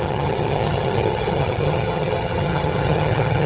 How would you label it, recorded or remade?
remade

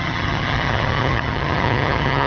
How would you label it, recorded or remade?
remade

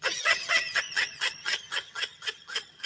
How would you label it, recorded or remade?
remade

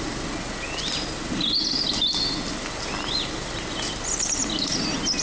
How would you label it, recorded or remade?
recorded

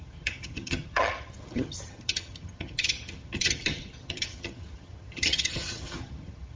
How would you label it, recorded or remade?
remade